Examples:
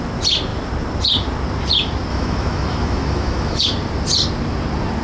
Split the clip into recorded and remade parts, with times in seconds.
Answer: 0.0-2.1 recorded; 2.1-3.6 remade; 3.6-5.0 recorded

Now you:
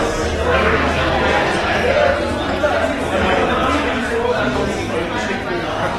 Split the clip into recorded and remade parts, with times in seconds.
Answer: 0.0-0.5 recorded; 0.5-1.2 remade; 1.2-3.4 recorded; 3.4-4.4 remade; 4.4-6.0 recorded

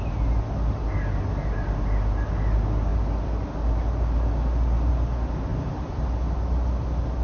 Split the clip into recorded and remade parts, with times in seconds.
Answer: 0.0-5.5 recorded; 5.5-6.1 remade; 6.1-7.2 recorded

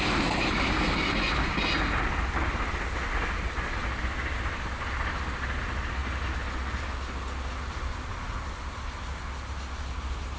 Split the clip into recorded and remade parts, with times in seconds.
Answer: 0.0-10.4 recorded